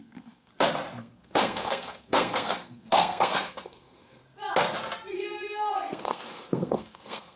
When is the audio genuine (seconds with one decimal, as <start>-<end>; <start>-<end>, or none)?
0.5-1.0; 4.2-5.1